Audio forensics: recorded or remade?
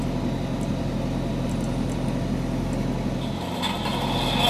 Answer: recorded